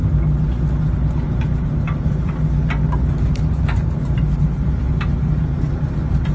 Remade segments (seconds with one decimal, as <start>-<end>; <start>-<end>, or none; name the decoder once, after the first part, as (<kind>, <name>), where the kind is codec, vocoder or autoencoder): 3.2-6.3 (vocoder, BigVGAN v2)